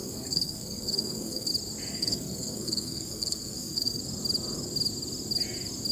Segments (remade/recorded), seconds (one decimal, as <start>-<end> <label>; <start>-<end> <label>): 0.0-1.5 remade; 1.5-1.9 recorded; 1.9-4.0 remade; 4.0-5.9 recorded